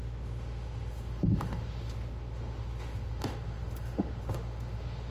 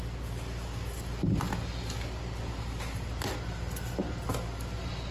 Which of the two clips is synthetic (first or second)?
first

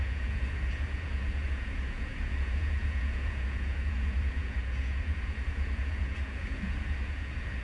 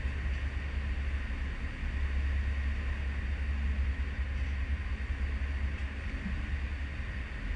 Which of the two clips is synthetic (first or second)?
first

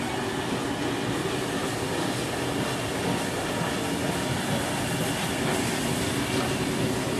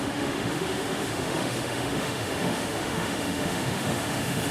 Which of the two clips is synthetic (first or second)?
second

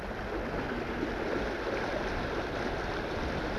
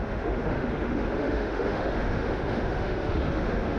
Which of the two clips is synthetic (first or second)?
second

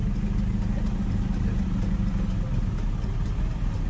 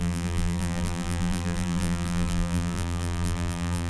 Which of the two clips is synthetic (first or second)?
second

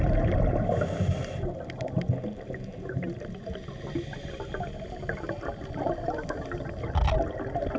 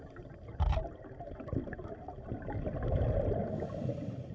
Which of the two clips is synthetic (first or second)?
second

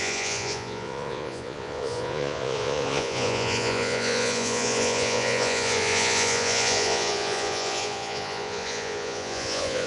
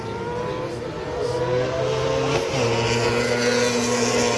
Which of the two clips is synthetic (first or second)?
first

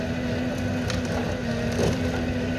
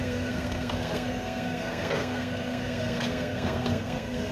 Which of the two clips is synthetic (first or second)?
second